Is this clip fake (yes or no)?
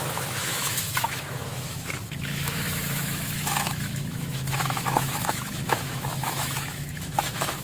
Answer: yes